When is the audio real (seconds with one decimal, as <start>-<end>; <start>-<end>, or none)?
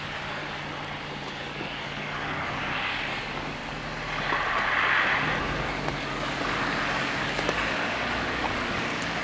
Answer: 0.4-1.4; 3.6-5.4